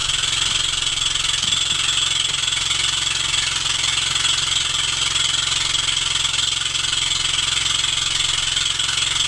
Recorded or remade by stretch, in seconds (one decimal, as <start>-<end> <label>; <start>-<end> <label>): 0.0-9.3 recorded